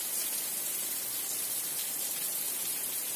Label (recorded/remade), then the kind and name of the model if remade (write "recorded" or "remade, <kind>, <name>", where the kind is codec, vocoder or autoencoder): recorded